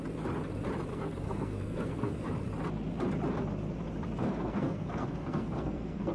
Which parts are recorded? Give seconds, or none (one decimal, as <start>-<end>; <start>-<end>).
0.0-0.9; 2.3-4.2